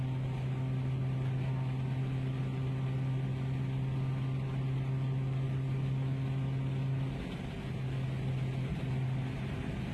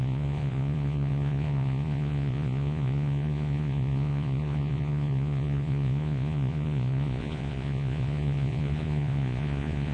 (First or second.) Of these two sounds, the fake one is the second